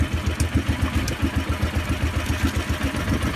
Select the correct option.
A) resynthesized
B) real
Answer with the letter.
B